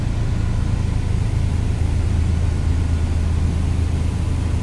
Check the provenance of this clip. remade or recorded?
recorded